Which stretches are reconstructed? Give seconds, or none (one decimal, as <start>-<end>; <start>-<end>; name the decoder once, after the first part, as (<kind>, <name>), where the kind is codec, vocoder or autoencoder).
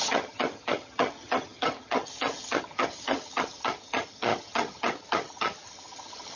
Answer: 0.0-6.4 (vocoder, HiFi-GAN)